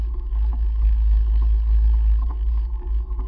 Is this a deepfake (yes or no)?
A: yes